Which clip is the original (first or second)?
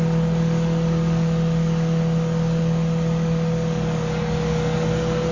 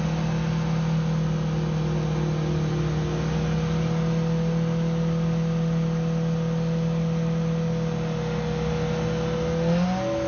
second